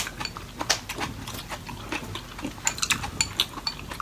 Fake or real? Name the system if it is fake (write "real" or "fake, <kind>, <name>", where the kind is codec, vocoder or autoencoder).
real